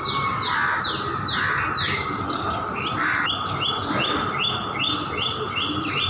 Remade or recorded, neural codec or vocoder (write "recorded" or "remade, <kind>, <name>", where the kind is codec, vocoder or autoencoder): recorded